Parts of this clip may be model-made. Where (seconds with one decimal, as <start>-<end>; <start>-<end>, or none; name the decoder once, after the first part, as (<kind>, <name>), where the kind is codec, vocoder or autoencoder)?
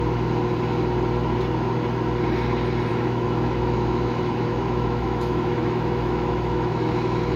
2.9-7.4 (autoencoder, DAC-VAE)